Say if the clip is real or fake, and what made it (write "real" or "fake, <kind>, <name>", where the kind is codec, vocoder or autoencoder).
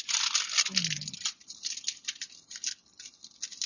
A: real